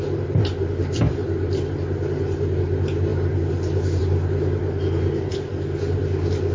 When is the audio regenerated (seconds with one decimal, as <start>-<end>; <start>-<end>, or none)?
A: none

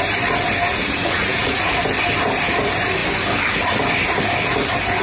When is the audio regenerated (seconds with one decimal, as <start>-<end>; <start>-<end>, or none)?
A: 0.7-1.8